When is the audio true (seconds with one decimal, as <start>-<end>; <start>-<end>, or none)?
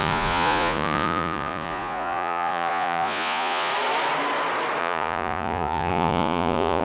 3.7-4.8